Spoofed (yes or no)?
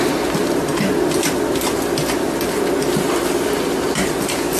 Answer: no